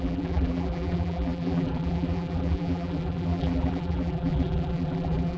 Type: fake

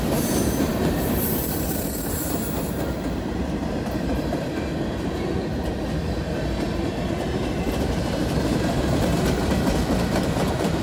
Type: fake